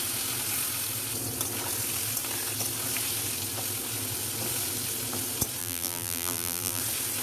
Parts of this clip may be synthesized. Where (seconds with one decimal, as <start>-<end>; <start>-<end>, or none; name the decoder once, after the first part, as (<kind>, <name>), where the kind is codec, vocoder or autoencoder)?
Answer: 5.6-6.8 (vocoder, BigVGAN v2)